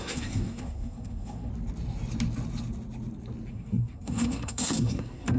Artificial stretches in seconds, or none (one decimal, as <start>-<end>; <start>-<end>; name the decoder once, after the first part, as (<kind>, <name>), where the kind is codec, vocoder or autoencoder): 0.0-1.5 (codec, SNAC); 3.5-5.4